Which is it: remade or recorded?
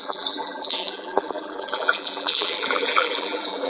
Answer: remade